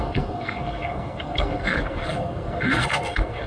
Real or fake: fake